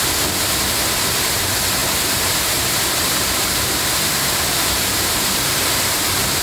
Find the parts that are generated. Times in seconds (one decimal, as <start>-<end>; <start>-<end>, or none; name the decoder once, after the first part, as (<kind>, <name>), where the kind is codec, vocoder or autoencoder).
1.8-5.6 (vocoder, BigVGAN v2)